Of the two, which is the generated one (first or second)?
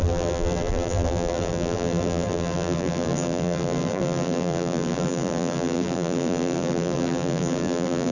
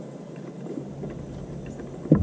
first